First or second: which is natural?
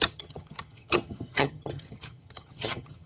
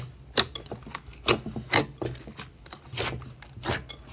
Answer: second